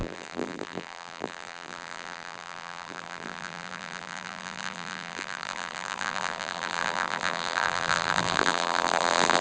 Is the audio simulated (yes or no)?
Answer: yes